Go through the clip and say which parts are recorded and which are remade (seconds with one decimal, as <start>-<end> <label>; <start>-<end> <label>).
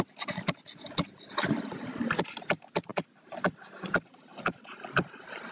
0.0-5.5 recorded